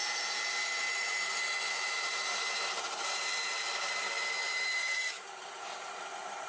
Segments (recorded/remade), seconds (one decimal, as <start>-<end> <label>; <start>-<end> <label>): 0.0-4.4 recorded; 4.4-5.5 remade; 5.5-6.5 recorded